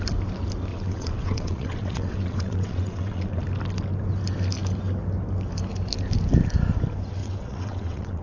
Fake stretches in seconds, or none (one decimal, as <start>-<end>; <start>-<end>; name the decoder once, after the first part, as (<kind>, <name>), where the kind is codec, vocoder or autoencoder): 0.7-3.4 (vocoder, WaveNeXt); 7.2-8.2